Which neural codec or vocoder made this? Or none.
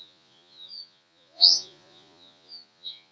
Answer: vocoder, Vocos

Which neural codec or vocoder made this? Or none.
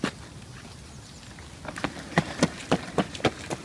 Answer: none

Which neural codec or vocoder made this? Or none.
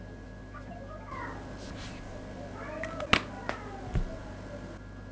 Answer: none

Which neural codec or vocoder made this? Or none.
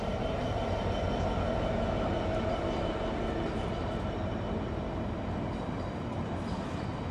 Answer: none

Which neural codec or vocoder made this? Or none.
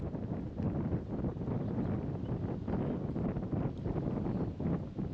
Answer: none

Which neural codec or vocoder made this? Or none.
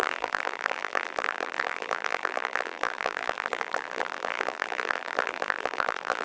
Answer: vocoder, BigVGAN v2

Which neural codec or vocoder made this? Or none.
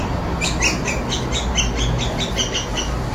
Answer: none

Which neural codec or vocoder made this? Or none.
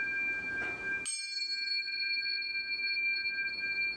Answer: none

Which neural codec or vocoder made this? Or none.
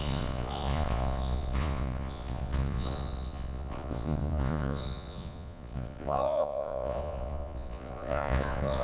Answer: vocoder, Vocos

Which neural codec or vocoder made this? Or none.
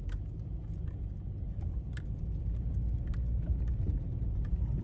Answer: none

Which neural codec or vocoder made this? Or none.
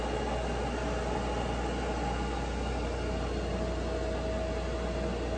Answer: none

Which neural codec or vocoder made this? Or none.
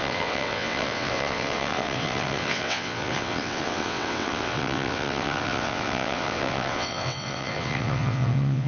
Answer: vocoder, WaveNeXt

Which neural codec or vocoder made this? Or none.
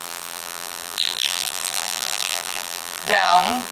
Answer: vocoder, BigVGAN v2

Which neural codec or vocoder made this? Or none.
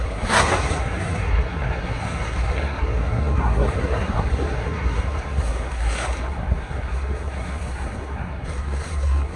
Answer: codec, SNAC